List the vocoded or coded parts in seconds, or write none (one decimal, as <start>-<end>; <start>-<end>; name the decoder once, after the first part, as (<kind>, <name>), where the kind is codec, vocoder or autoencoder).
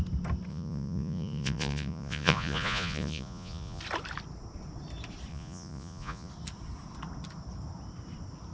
0.5-3.8 (vocoder, Vocos); 5.3-6.3